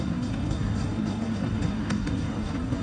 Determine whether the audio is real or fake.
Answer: fake